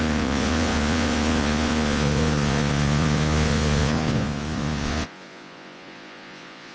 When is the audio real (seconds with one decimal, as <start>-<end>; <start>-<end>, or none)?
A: none